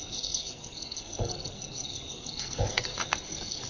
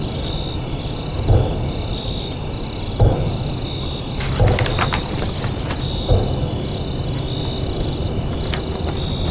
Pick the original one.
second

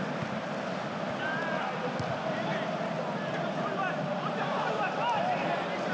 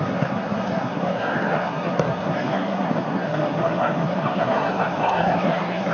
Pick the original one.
first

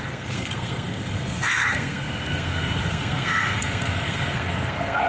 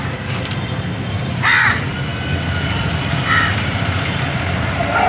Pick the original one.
second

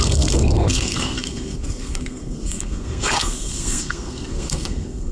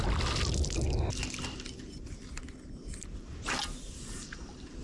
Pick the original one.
second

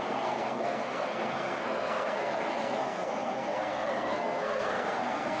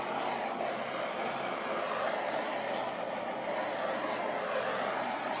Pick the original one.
second